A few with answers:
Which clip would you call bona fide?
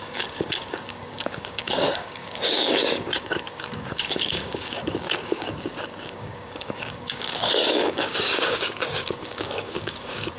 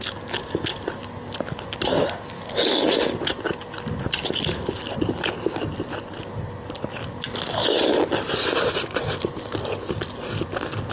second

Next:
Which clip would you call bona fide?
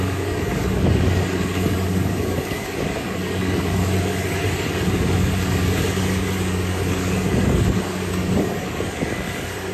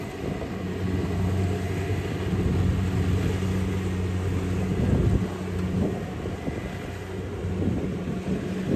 second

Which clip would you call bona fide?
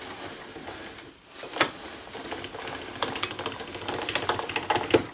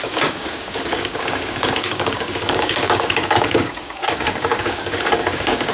first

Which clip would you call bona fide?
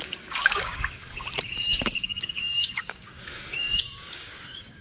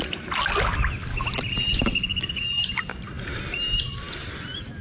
second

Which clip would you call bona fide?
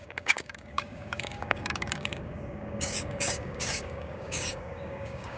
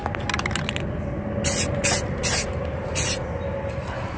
second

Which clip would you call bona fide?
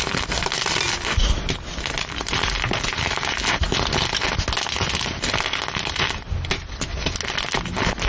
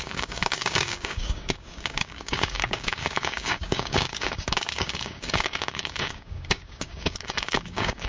first